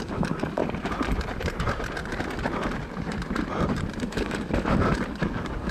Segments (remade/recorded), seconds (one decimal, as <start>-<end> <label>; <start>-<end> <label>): 0.0-0.6 remade; 0.6-4.0 recorded; 4.0-5.7 remade